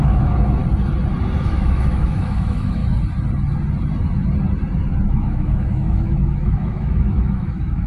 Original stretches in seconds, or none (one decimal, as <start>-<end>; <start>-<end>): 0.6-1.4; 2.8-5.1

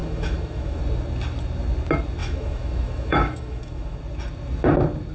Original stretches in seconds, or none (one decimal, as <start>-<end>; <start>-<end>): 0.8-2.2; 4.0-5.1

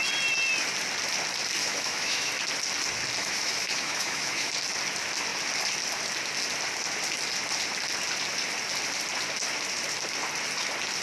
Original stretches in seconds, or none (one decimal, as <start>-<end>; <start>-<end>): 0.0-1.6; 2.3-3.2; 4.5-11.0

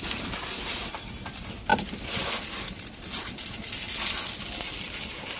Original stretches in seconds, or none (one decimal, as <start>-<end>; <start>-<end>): 0.0-5.4